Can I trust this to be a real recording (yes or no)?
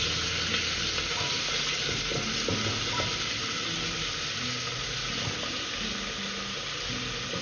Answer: yes